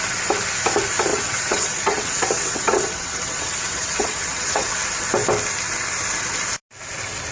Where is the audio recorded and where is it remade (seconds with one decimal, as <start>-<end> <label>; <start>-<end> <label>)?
0.0-1.1 recorded; 1.1-4.7 remade; 4.7-7.3 recorded